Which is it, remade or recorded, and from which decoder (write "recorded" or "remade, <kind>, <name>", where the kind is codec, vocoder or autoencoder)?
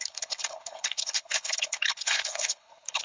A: remade, codec, HILCodec